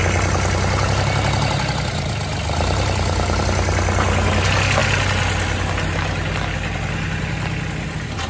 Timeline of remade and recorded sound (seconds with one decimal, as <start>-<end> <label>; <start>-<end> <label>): 0.0-8.3 recorded